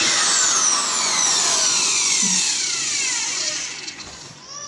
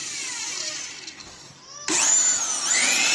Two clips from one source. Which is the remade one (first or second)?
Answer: first